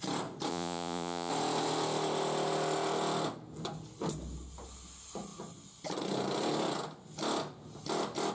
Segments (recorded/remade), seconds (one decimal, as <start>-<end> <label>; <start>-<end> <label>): 0.0-0.5 recorded; 0.5-1.3 remade; 1.3-8.3 recorded